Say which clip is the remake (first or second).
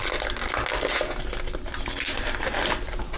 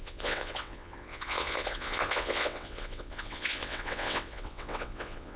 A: second